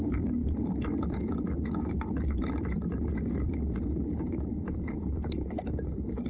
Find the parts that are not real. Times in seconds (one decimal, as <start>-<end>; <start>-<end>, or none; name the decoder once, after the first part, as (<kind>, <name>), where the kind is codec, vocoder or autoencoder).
0.0-0.4 (vocoder, BigVGAN v2); 4.2-6.3